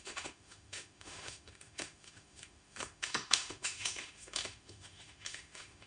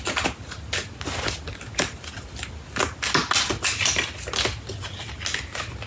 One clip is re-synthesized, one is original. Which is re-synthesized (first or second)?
first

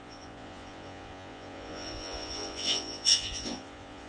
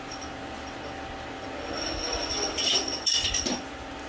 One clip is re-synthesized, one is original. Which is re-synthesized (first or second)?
first